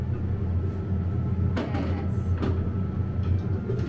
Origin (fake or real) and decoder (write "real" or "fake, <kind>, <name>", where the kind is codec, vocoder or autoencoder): real